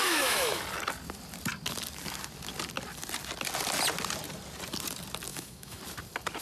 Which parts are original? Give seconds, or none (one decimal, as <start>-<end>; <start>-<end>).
0.6-5.3; 5.8-6.4